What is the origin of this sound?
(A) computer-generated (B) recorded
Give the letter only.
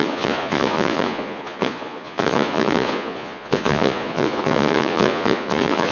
A